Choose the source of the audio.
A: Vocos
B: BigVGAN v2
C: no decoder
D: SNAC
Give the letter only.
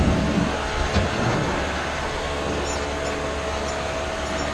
C